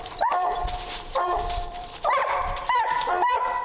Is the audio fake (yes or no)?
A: yes